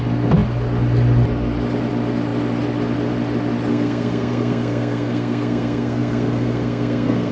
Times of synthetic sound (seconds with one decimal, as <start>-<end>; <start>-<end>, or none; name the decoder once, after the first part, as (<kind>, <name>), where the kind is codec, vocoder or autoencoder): 3.7-7.3 (codec, SNAC)